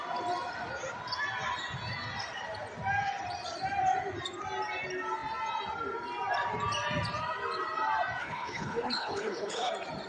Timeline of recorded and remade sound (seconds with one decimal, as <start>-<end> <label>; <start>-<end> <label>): 0.0-8.2 recorded; 8.2-9.7 remade; 9.7-10.1 recorded